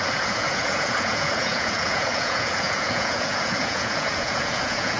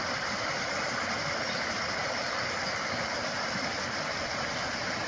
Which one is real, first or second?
second